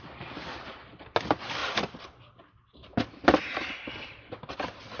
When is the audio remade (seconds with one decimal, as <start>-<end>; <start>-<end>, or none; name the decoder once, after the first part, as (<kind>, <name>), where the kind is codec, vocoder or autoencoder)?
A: none